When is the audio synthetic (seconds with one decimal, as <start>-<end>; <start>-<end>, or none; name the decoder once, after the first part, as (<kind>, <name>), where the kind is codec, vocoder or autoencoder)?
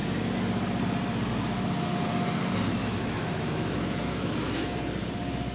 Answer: 2.7-4.7 (autoencoder, DAC-VAE)